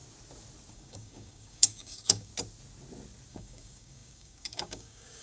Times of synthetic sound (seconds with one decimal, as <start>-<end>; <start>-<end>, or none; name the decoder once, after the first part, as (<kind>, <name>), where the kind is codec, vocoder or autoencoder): 0.7-2.3 (codec, DAC); 3.3-5.2